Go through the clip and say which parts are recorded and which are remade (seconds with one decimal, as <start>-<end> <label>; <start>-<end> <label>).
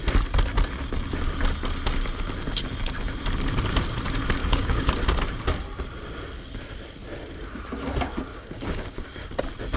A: 0.0-4.4 recorded; 4.4-4.9 remade; 4.9-8.3 recorded; 8.3-9.3 remade; 9.3-9.8 recorded